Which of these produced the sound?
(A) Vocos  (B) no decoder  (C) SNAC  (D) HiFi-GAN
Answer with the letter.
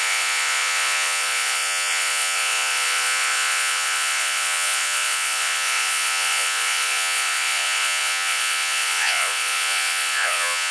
A